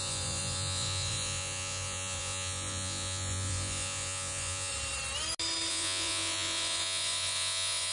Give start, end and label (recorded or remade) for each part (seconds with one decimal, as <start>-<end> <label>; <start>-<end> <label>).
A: 0.0-4.7 remade; 4.7-5.7 recorded; 5.7-7.9 remade